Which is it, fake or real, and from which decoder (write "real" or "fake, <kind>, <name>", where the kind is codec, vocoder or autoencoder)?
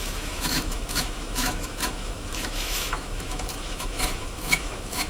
fake, autoencoder, DAC-VAE